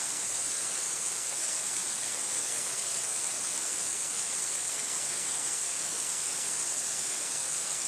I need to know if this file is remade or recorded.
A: remade